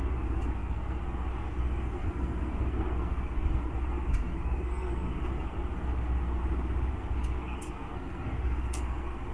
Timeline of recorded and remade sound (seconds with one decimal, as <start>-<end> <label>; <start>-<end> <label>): 0.0-6.4 remade; 6.4-6.9 recorded; 6.9-9.3 remade

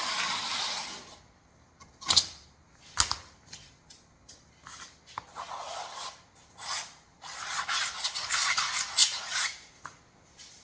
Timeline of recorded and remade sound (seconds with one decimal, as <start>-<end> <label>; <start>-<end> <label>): 0.0-9.0 recorded; 9.0-10.0 remade; 10.0-10.6 recorded

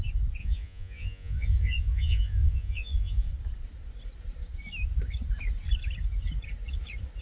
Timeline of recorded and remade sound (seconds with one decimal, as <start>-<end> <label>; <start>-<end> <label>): 0.0-0.4 recorded; 0.4-3.3 remade; 3.3-7.2 recorded

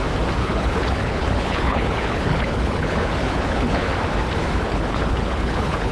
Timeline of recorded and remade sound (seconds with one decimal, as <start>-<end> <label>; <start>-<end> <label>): 0.0-0.4 recorded; 0.4-3.9 remade; 3.9-4.4 recorded; 4.4-5.9 remade

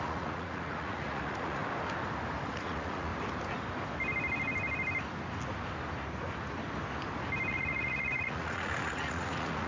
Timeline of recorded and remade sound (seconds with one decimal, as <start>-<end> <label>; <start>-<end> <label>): 0.0-1.6 remade; 1.6-2.5 recorded; 2.5-3.1 remade; 3.1-7.5 recorded; 7.5-9.7 remade

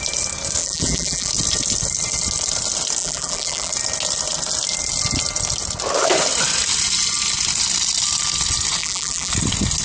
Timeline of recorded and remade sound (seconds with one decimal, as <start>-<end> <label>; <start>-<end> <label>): 0.0-0.6 recorded; 0.6-1.3 remade; 1.3-3.0 recorded; 3.0-3.7 remade; 3.7-8.8 recorded; 8.8-9.3 remade; 9.3-9.8 recorded

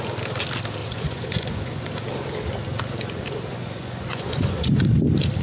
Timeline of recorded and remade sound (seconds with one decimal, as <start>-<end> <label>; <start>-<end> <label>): 0.0-0.8 recorded; 0.8-1.9 remade; 1.9-3.5 recorded; 3.5-4.7 remade; 4.7-5.4 recorded

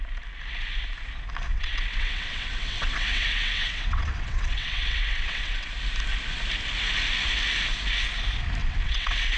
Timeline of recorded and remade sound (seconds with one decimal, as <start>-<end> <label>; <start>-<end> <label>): 0.0-1.5 recorded; 1.5-5.7 remade; 5.7-8.6 recorded; 8.6-9.4 remade